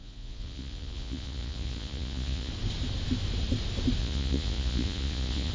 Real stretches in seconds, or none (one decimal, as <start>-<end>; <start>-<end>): 2.5-4.0